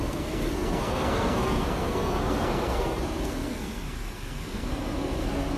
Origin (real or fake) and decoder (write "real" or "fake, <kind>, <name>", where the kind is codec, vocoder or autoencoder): fake, codec, SNAC